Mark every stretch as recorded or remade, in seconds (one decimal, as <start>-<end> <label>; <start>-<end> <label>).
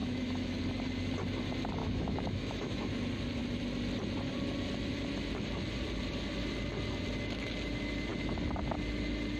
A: 0.0-0.6 remade; 0.6-1.8 recorded; 1.8-2.9 remade; 2.9-9.4 recorded